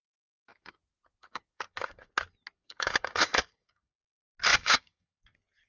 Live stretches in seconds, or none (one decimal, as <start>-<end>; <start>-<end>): 0.0-0.5; 2.1-2.6; 4.0-4.5; 5.2-5.7